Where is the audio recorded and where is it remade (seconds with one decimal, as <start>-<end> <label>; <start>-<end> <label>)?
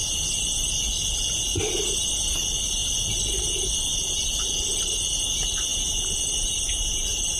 0.0-5.7 recorded; 5.7-7.4 remade